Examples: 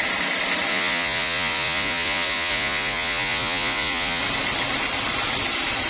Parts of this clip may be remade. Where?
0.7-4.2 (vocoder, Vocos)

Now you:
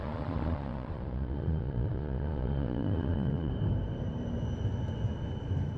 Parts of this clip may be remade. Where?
0.0-3.5 (vocoder, Vocos)

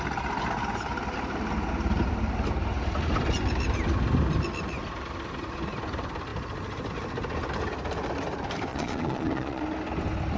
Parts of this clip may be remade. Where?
8.7-9.6 (vocoder, Vocos)

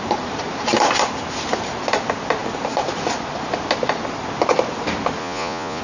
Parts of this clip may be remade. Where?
5.2-5.8 (vocoder, Vocos)

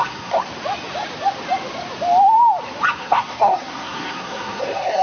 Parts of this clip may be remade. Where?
0.0-0.4 (codec, SNAC); 2.9-5.0